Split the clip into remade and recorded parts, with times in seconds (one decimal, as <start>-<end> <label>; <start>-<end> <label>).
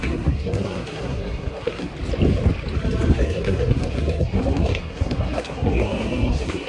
0.0-1.9 remade; 1.9-3.1 recorded; 3.1-6.7 remade